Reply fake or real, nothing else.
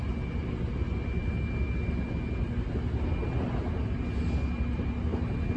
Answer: real